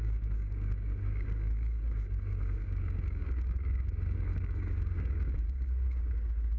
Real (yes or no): no